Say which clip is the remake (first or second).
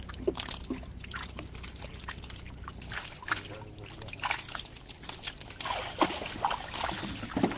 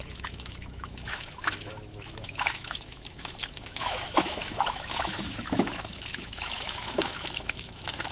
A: second